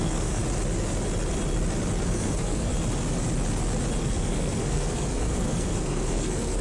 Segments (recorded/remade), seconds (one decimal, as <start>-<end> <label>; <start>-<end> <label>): 0.0-0.4 remade; 0.4-2.0 recorded; 2.0-2.7 remade; 2.7-4.0 recorded; 4.0-6.6 remade